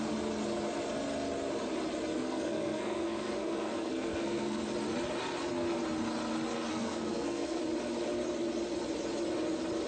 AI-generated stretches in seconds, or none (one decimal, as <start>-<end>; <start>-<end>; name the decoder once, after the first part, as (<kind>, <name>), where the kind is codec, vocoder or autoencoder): 2.1-4.6 (codec, SNAC); 6.7-7.6